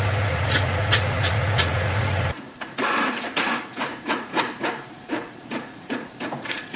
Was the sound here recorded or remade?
remade